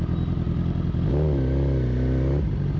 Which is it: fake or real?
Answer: real